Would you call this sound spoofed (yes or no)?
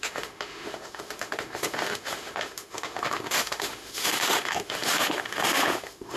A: yes